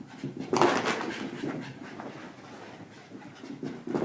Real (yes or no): yes